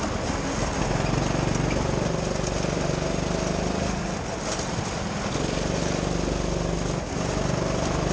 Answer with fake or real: real